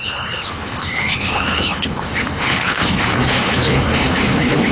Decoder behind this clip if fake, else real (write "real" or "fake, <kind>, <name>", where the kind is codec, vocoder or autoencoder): fake, codec, HILCodec